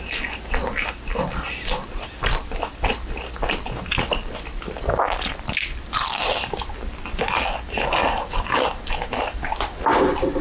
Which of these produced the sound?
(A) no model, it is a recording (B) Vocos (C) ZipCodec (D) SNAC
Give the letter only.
A